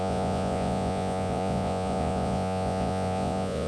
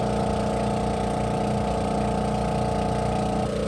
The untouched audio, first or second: second